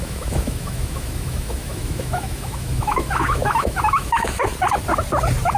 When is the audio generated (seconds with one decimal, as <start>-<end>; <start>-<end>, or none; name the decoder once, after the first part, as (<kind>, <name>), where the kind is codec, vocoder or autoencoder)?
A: 0.0-4.5 (autoencoder, DAC-VAE)